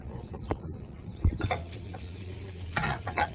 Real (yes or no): no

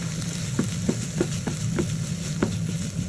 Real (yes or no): yes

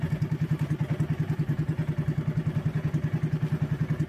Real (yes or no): no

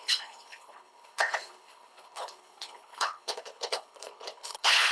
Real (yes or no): no